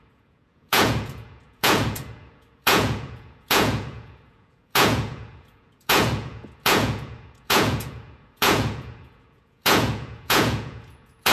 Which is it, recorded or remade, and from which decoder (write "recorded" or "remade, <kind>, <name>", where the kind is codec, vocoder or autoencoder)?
remade, vocoder, Vocos